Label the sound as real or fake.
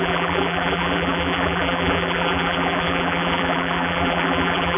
fake